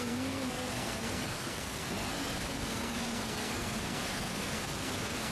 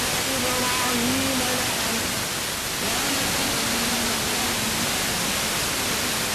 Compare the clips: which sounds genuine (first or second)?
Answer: second